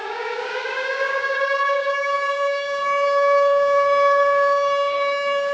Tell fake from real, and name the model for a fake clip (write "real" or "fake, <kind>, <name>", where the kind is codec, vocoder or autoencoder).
fake, codec, DAC